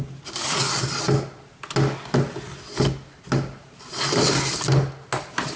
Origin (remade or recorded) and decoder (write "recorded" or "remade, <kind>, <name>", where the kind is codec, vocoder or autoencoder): recorded